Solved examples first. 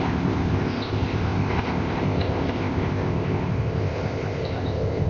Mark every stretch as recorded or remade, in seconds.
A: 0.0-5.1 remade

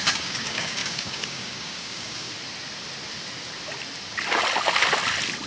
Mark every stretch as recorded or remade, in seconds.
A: 0.0-2.3 remade; 2.3-5.5 recorded

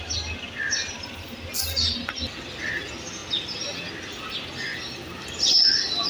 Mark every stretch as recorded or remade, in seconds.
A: 0.0-6.1 recorded

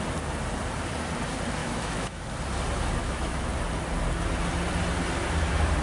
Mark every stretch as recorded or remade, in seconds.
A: 0.0-1.6 recorded; 1.6-2.2 remade; 2.2-3.0 recorded; 3.0-3.5 remade; 3.5-5.8 recorded

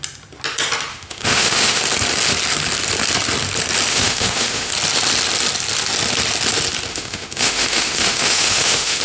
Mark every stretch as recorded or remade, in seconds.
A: 0.0-0.9 recorded; 0.9-1.8 remade; 1.8-3.9 recorded; 3.9-4.7 remade; 4.7-6.9 recorded; 6.9-9.0 remade

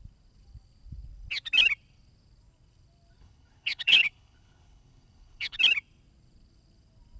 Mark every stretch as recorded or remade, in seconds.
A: 0.0-3.2 recorded; 3.2-5.6 remade; 5.6-7.2 recorded

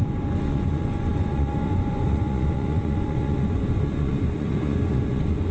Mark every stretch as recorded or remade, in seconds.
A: 0.0-5.5 remade

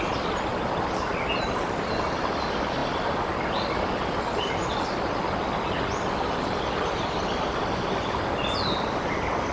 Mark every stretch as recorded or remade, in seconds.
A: 0.0-9.5 recorded